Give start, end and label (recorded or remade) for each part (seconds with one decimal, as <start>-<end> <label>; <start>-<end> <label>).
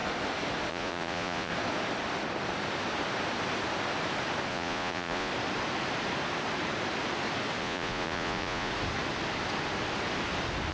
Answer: 0.0-0.7 recorded; 0.7-1.5 remade; 1.5-4.5 recorded; 4.5-5.3 remade; 5.3-7.6 recorded; 7.6-8.7 remade; 8.7-10.7 recorded